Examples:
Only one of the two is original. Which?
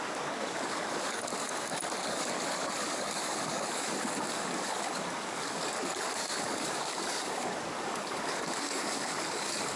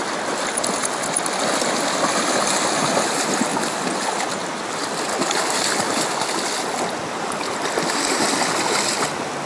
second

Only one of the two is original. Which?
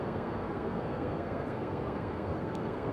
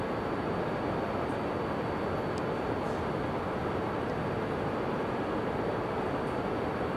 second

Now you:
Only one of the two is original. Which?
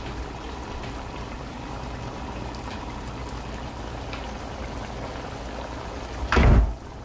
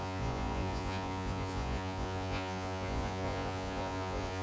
first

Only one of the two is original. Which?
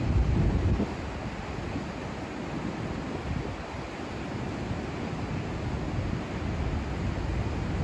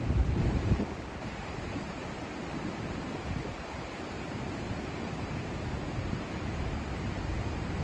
first